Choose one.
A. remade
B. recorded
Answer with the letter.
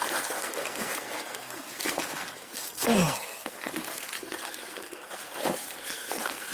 A